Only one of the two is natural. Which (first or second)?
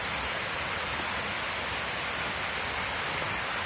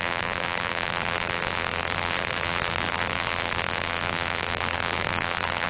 first